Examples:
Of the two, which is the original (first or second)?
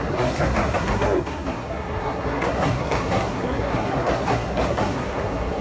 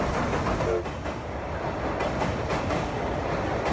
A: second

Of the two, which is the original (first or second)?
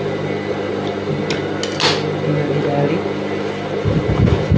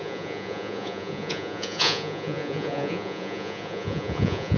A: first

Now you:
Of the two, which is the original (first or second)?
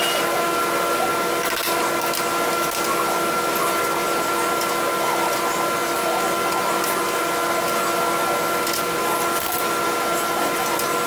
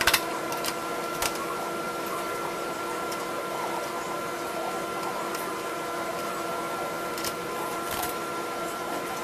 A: first